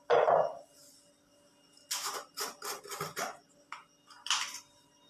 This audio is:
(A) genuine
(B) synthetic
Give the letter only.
A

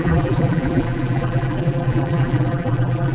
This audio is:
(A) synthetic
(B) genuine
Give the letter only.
A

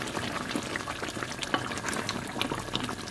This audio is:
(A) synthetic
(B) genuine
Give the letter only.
B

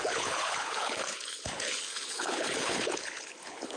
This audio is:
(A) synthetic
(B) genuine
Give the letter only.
A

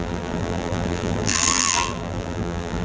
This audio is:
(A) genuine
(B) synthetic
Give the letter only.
B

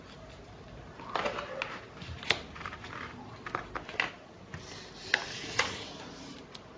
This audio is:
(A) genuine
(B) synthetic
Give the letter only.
A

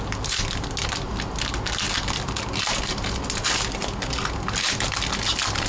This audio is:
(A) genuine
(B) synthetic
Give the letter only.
A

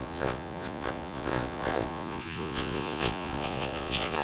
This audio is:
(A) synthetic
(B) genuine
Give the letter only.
A